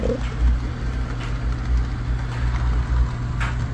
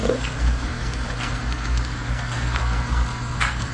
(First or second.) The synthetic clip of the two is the second